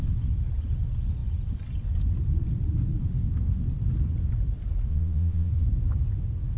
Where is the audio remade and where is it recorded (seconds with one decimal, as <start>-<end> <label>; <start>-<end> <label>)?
0.0-4.9 recorded; 4.9-5.5 remade; 5.5-6.6 recorded